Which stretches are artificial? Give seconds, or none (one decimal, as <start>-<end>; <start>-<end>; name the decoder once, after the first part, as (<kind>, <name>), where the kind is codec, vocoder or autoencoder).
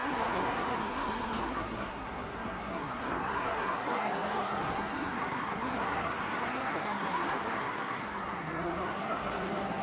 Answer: 0.0-9.8 (codec, SNAC)